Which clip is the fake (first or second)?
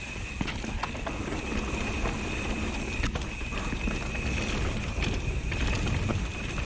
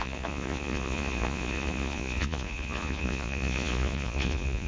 second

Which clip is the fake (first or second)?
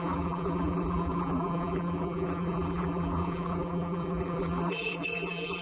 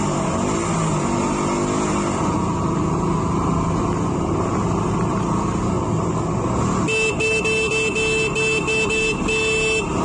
first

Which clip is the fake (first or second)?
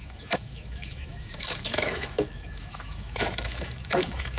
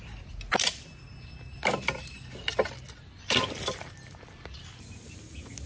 first